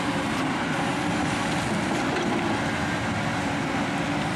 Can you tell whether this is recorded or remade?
recorded